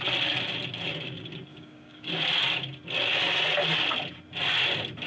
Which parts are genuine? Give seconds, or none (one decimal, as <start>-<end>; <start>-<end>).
0.0-1.5; 2.1-5.1